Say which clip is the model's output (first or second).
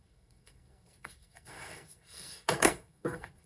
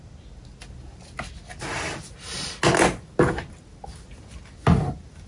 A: first